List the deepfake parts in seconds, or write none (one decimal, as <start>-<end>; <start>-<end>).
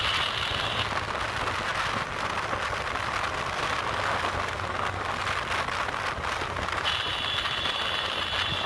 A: none